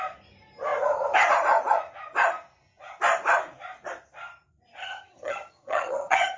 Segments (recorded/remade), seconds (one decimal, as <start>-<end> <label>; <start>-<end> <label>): 0.0-4.8 recorded; 4.8-6.4 remade